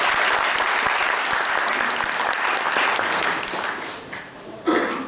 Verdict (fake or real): real